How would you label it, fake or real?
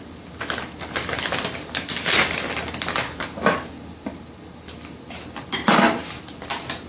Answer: fake